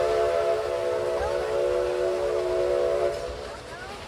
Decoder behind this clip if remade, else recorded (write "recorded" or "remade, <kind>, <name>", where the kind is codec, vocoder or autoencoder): recorded